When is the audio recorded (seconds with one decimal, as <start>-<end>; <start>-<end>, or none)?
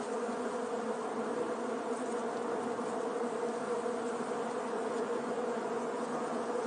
0.6-4.6